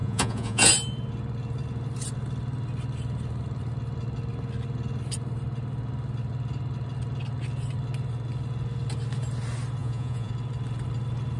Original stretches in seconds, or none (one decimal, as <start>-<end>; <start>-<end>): 0.7-9.8; 10.3-11.4